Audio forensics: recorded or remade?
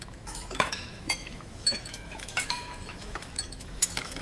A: remade